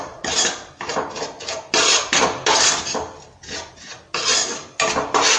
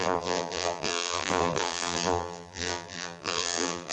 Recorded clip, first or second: first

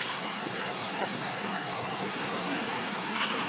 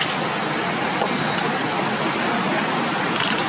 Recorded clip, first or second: second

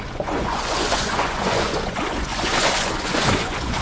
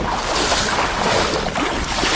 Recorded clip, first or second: second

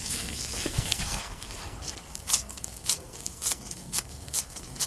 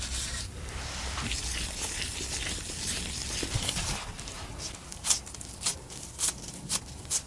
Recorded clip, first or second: second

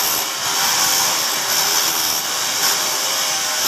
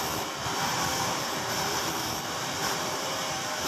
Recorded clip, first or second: first